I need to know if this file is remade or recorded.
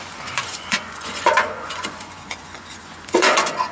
remade